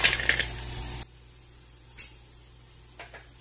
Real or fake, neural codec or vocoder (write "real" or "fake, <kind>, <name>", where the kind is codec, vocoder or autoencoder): real